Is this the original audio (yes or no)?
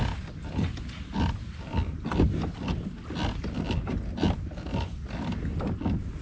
yes